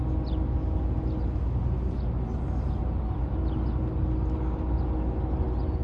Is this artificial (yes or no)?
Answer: no